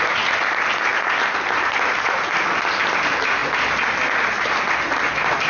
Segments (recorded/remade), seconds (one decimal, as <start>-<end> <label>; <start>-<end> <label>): 0.0-5.5 recorded